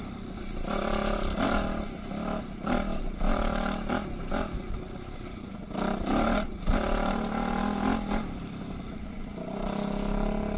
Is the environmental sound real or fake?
real